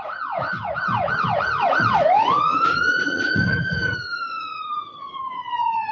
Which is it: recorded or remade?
remade